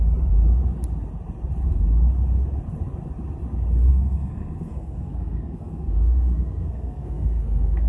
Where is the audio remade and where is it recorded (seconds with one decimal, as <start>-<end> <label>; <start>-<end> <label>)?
0.0-3.9 recorded; 3.9-7.9 remade